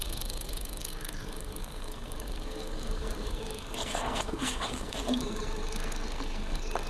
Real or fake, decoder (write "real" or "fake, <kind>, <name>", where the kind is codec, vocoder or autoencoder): fake, codec, SNAC